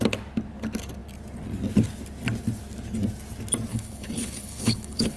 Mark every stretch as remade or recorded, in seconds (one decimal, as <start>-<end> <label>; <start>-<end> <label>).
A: 0.0-3.7 recorded; 3.7-5.2 remade